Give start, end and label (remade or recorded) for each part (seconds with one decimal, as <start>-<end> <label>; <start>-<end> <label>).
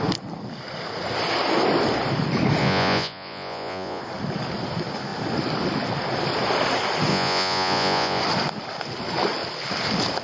0.0-2.6 recorded; 2.6-4.0 remade; 4.0-7.1 recorded; 7.1-8.2 remade; 8.2-10.2 recorded